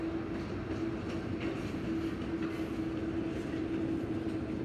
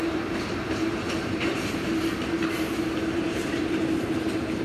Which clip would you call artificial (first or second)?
second